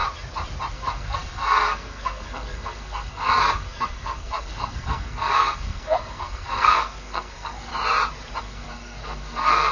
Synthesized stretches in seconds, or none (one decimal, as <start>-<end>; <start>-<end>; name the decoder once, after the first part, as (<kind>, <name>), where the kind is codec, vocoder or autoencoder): 0.7-7.7 (codec, SNAC); 8.4-9.7